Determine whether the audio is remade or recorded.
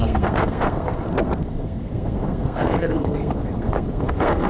remade